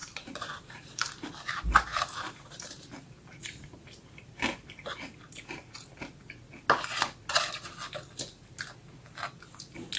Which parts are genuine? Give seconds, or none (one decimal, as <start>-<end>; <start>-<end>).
4.4-10.0